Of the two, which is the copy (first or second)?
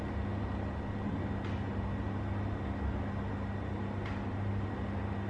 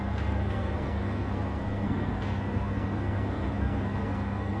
second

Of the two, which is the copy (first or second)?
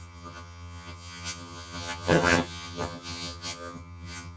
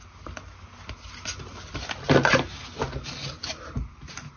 first